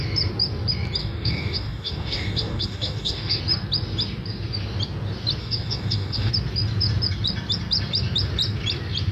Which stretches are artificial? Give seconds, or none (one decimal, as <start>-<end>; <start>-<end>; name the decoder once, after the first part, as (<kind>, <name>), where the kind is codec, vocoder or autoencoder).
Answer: 1.0-3.4 (codec, DAC); 5.4-6.3